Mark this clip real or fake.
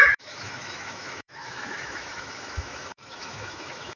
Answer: fake